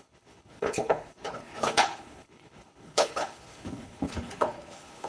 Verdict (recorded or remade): remade